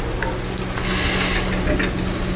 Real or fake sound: real